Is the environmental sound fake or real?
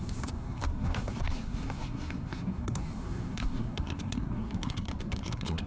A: fake